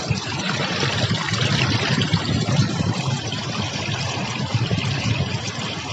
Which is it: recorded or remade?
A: remade